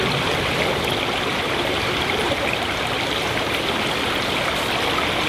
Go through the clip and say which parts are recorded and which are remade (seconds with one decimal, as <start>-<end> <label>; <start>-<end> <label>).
0.0-1.3 recorded; 1.3-2.8 remade; 2.8-5.3 recorded